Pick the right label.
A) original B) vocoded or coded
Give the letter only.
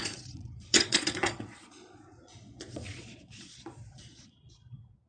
B